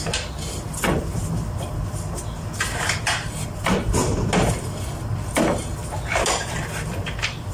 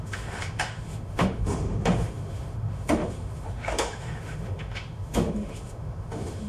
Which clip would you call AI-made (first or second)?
second